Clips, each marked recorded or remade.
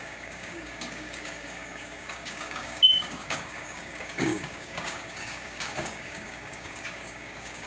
remade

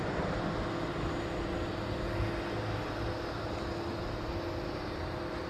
recorded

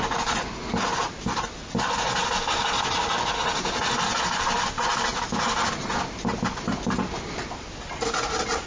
recorded